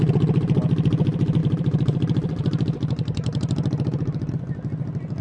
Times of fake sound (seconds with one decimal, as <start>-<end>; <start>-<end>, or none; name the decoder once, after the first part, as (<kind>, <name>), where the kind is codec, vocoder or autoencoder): 1.4-4.3 (vocoder, BigVGAN v2)